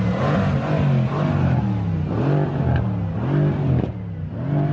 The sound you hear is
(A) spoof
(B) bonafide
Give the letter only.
B